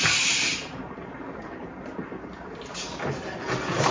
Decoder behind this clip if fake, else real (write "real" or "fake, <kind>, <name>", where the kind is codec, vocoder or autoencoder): real